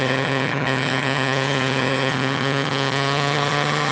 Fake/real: fake